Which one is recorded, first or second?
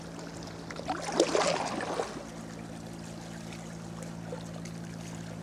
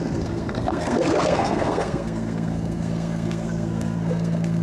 first